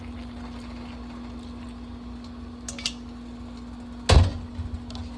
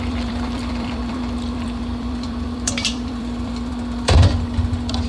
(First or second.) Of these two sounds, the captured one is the first